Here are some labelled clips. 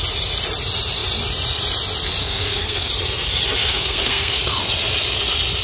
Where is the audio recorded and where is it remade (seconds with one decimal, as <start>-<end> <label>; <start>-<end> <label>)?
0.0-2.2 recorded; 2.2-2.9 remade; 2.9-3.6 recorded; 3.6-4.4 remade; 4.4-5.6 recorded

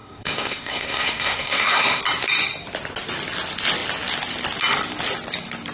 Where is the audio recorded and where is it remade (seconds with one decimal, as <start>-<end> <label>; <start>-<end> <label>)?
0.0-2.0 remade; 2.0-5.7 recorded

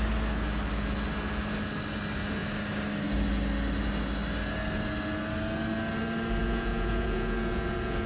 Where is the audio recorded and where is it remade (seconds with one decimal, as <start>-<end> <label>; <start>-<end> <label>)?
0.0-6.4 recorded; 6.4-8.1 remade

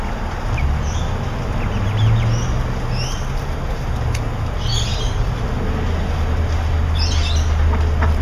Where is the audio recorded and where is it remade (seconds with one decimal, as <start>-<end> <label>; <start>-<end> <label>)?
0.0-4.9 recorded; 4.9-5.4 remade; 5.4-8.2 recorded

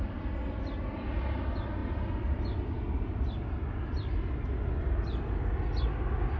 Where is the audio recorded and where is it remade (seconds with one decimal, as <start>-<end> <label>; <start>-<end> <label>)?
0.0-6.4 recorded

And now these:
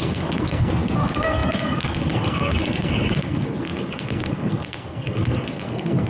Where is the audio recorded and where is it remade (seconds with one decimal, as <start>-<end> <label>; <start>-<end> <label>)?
0.0-6.1 remade

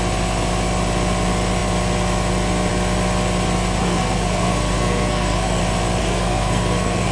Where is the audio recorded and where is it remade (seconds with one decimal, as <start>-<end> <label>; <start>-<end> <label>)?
0.0-3.8 recorded; 3.8-5.6 remade; 5.6-6.0 recorded; 6.0-7.1 remade

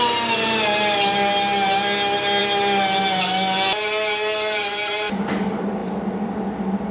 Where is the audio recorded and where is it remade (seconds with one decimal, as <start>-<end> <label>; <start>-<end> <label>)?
0.0-6.9 recorded